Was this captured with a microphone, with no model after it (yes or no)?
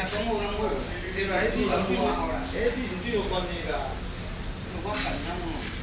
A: yes